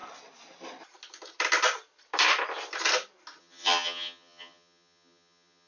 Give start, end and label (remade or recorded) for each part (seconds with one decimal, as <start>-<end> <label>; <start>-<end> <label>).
0.0-3.4 recorded; 3.4-5.7 remade